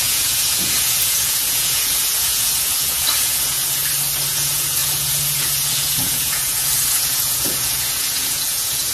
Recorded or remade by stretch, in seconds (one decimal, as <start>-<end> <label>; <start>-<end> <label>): 0.0-3.8 remade; 3.8-4.3 recorded; 4.3-8.9 remade